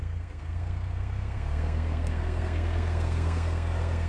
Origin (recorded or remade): remade